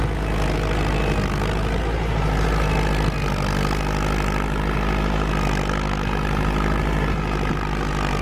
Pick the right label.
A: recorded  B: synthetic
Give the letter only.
A